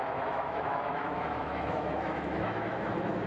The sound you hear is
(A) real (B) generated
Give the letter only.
B